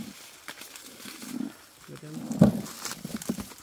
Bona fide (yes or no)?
yes